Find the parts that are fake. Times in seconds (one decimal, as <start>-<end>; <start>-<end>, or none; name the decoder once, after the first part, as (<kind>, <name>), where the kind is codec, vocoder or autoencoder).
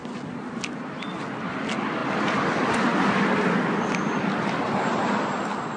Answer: 2.0-4.6 (vocoder, BigVGAN v2)